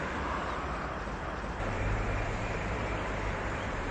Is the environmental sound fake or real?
fake